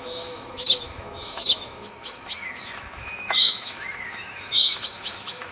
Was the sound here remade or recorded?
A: remade